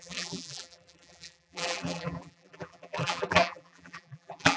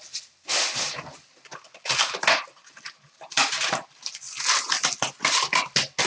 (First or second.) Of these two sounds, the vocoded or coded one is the first